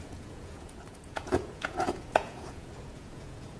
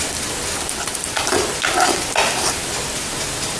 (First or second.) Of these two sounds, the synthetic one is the first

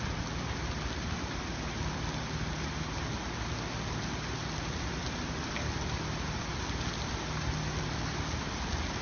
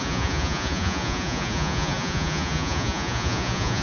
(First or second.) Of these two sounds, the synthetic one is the second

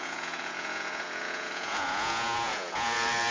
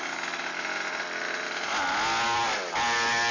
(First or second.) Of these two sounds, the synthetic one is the first